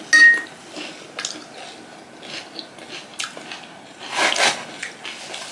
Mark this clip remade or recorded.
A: recorded